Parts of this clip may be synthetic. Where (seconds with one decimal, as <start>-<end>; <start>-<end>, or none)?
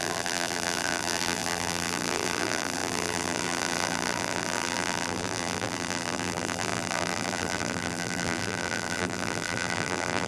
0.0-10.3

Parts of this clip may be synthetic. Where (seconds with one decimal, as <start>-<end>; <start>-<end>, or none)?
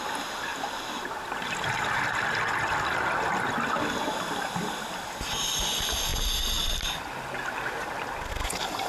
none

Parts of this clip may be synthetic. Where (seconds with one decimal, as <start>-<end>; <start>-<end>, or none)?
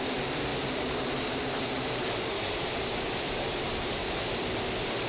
0.0-4.0